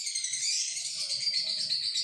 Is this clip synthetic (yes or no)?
no